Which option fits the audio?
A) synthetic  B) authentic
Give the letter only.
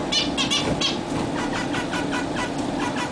B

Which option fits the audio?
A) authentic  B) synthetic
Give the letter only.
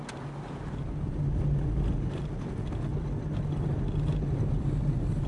A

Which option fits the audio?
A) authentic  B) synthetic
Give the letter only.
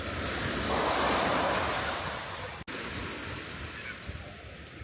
A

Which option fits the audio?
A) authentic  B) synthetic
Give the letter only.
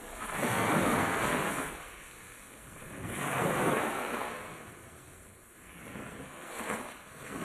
B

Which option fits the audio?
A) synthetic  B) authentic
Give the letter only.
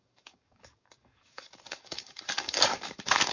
A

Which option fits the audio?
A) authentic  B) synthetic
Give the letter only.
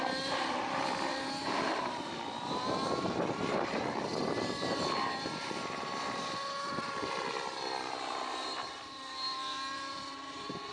B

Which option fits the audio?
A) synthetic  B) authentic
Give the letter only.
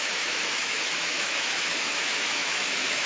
A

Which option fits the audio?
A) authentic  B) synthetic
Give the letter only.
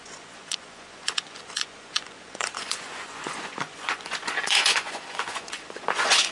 B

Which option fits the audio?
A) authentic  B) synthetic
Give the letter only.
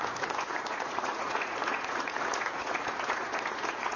B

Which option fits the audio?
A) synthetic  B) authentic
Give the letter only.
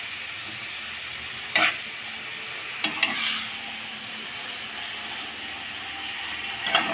B